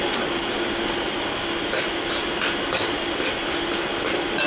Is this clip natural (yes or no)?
yes